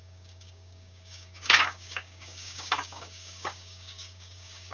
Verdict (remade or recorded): remade